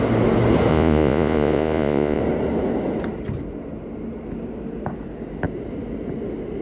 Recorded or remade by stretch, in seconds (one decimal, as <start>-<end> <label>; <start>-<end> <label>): 0.0-0.7 recorded; 0.7-2.2 remade; 2.2-6.6 recorded